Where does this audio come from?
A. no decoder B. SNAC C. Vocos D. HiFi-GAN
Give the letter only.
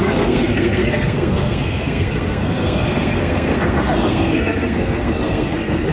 B